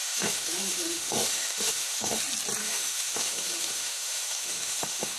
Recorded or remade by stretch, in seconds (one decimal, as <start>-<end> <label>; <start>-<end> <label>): 0.0-2.2 remade; 2.2-2.6 recorded; 2.6-5.2 remade